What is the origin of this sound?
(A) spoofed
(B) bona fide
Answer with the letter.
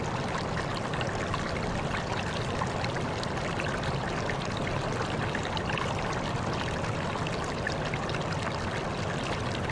B